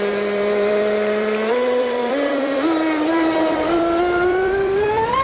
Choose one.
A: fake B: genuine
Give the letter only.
A